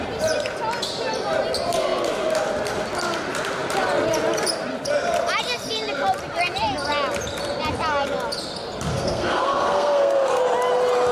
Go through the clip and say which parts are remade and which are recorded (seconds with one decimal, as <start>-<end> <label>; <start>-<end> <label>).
0.0-8.9 recorded; 8.9-10.4 remade; 10.4-11.1 recorded